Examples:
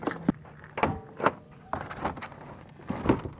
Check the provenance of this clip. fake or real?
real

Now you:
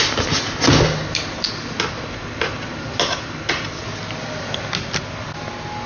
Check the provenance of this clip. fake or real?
real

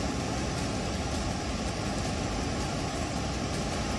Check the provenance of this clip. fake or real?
real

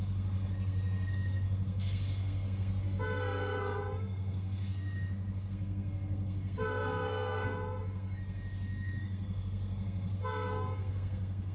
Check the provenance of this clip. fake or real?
fake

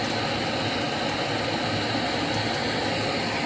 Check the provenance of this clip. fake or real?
real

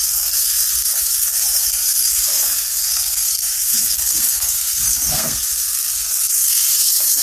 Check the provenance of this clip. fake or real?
fake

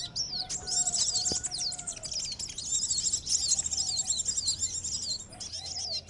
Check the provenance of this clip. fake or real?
real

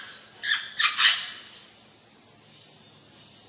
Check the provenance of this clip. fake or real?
real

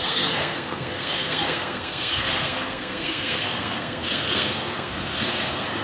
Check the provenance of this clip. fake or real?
fake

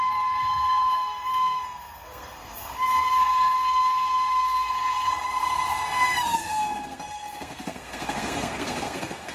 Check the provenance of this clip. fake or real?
fake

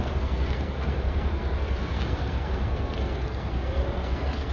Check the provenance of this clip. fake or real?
fake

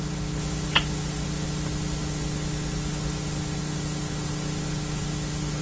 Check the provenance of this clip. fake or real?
real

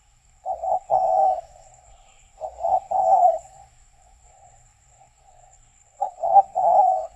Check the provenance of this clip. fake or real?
fake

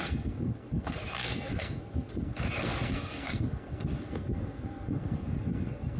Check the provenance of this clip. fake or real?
fake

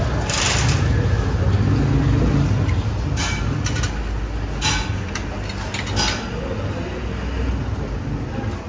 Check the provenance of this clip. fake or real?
real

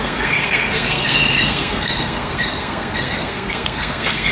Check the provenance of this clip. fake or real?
fake